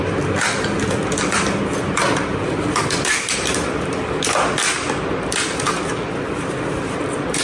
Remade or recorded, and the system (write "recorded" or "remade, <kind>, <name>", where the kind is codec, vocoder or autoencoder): recorded